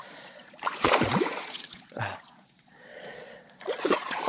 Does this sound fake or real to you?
fake